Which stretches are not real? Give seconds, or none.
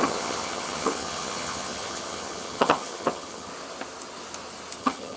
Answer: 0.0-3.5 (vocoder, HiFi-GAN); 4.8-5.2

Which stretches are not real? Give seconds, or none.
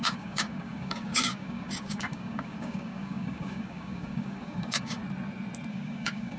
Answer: 0.0-5.0 (codec, DAC); 5.7-6.4